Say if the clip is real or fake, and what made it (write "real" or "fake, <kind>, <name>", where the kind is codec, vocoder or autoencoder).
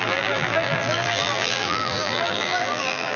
fake, vocoder, BigVGAN v2